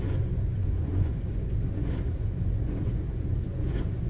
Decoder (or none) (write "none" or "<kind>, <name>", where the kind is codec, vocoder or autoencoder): vocoder, Vocos